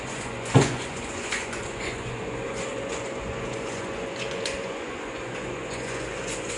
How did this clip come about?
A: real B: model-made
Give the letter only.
B